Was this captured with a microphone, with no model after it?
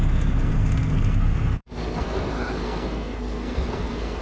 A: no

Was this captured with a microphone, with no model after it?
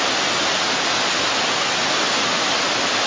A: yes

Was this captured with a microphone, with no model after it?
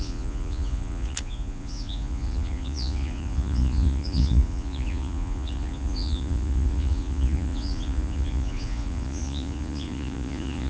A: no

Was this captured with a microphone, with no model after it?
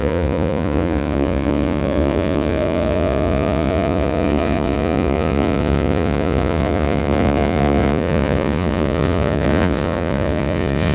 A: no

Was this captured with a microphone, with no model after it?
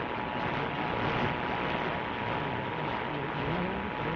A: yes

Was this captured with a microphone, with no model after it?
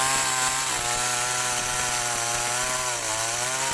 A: yes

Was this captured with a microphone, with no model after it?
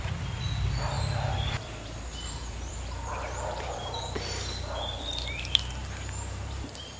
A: no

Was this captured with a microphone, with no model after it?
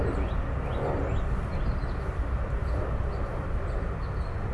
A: yes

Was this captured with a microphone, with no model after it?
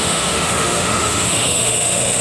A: no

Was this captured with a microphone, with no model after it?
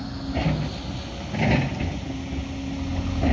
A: yes